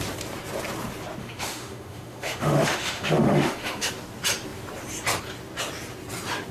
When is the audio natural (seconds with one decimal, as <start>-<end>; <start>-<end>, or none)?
0.0-1.2; 3.9-6.5